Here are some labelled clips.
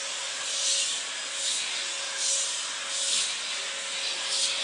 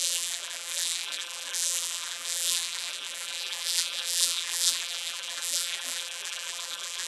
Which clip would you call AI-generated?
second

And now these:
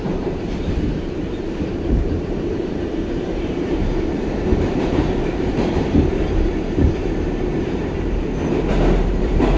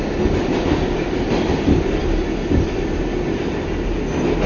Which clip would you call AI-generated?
first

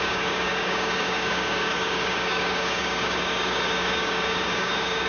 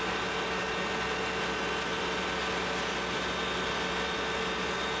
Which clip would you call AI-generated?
first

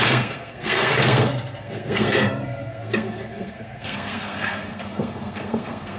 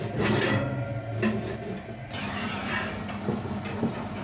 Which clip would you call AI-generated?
first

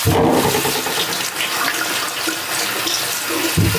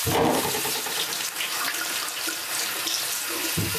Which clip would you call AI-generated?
second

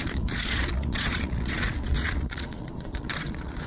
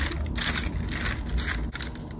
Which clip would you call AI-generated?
first